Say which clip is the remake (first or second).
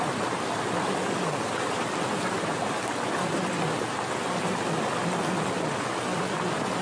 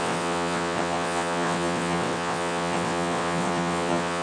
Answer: second